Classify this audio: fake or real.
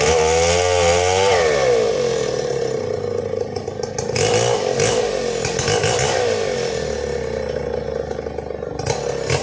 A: real